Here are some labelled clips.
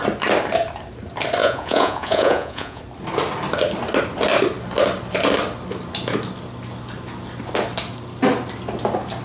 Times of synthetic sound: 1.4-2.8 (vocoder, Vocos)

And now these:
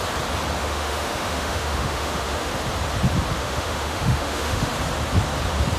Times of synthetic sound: 0.6-2.5 (autoencoder, DAC-VAE); 3.4-4.7

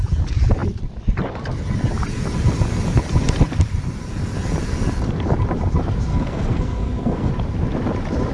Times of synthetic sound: 6.1-7.3 (codec, SNAC)

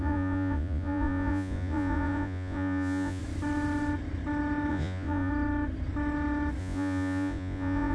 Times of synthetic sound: 0.0-3.2 (vocoder, Vocos); 4.7-5.3; 6.6-7.9

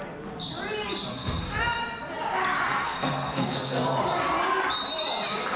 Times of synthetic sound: 1.1-1.8 (codec, SNAC); 2.7-4.0